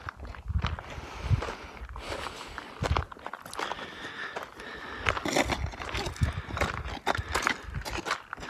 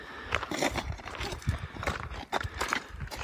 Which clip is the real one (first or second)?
first